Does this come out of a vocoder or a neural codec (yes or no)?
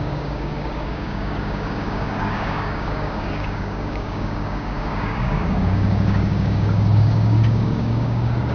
yes